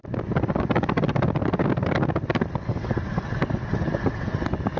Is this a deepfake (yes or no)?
no